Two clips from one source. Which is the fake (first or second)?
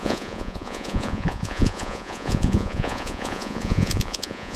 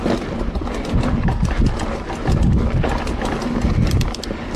first